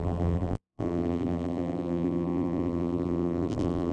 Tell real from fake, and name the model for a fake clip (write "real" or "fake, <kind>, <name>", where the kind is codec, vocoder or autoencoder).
fake, vocoder, BigVGAN v2